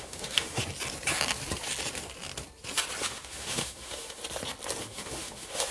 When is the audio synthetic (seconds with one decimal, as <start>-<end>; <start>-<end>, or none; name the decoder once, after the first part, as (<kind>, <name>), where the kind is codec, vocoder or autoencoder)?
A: 0.0-0.6 (autoencoder, DAC-VAE); 3.0-4.2; 4.8-5.7